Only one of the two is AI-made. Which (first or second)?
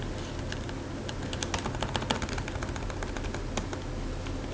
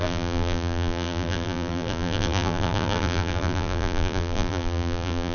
second